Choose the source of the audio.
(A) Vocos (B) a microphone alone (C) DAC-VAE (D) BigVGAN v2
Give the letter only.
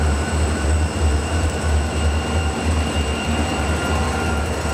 D